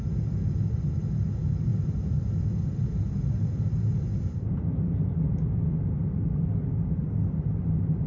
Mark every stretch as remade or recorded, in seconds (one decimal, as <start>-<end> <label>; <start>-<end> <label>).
0.0-8.1 recorded